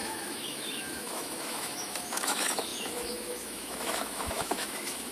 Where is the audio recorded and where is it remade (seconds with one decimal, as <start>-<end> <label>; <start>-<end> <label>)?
0.0-5.1 remade